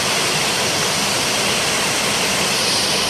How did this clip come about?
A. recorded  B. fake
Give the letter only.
A